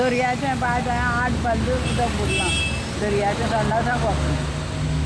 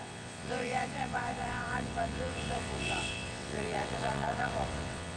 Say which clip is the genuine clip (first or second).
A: first